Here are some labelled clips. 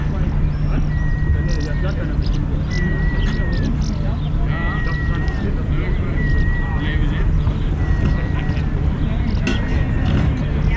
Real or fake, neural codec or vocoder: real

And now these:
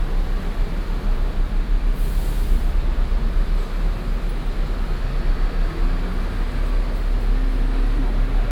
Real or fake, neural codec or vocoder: real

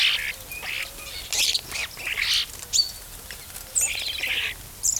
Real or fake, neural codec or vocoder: real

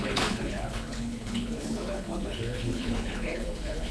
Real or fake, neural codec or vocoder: fake, codec, HILCodec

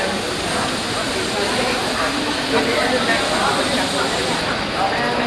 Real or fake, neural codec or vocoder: real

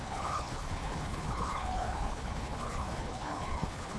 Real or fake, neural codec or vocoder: fake, codec, HILCodec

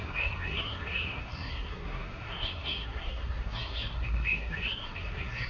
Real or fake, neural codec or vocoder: fake, codec, SNAC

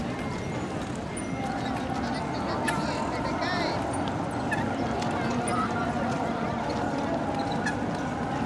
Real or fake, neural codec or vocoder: real